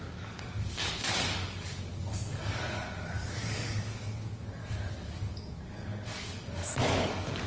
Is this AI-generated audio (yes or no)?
yes